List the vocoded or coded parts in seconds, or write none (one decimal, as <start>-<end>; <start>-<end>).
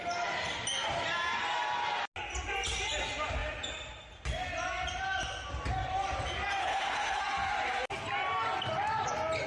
6.6-7.2